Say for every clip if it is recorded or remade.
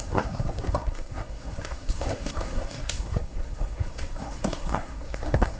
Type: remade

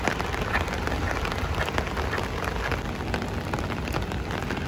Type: recorded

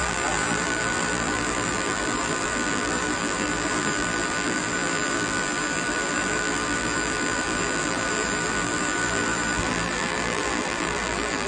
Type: remade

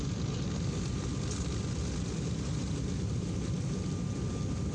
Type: recorded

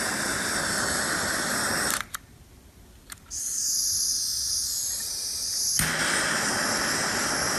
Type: recorded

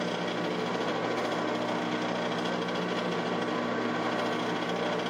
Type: recorded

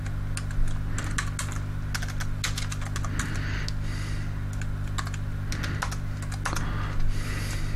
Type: recorded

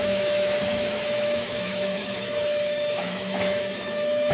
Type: remade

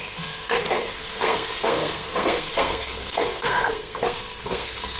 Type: remade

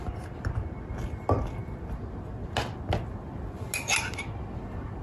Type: recorded